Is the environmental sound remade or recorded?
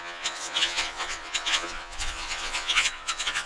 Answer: remade